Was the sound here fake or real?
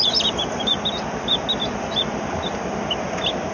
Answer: real